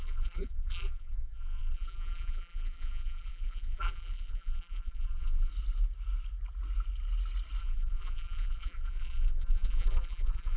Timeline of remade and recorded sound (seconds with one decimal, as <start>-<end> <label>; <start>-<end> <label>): 0.0-5.5 remade; 5.5-7.6 recorded; 7.6-10.6 remade

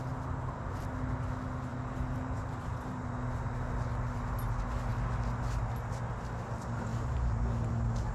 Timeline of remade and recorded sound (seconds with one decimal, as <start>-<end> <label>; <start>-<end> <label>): 0.0-1.7 recorded; 1.7-3.1 remade; 3.1-6.9 recorded; 6.9-7.4 remade; 7.4-8.1 recorded

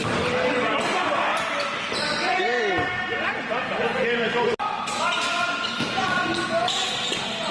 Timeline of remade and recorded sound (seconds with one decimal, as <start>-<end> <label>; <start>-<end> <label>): 0.0-1.3 recorded; 1.3-2.6 remade; 2.6-3.3 recorded; 3.3-5.7 remade; 5.7-7.5 recorded

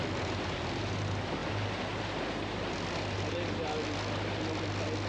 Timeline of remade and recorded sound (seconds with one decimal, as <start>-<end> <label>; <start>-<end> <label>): 0.0-5.1 recorded

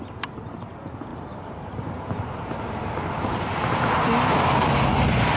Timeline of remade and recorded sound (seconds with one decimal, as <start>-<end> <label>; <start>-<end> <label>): 0.0-1.1 recorded; 1.1-4.3 remade; 4.3-5.4 recorded